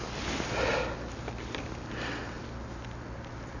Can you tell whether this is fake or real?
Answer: real